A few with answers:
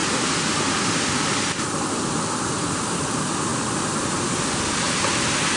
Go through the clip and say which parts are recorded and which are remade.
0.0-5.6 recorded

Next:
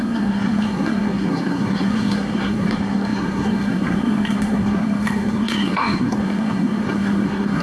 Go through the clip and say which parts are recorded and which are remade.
0.0-7.6 remade

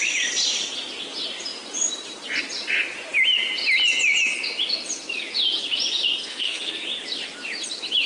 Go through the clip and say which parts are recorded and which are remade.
0.0-6.2 recorded; 6.2-6.7 remade; 6.7-8.1 recorded

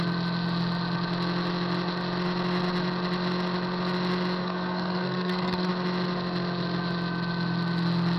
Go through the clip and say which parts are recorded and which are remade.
0.0-4.4 recorded; 4.4-5.7 remade; 5.7-8.2 recorded

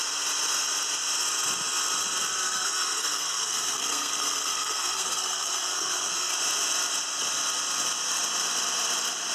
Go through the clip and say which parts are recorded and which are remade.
0.0-2.4 recorded; 2.4-6.3 remade; 6.3-9.3 recorded